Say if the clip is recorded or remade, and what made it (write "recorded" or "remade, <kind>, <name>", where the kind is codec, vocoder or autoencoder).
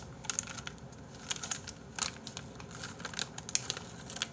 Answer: recorded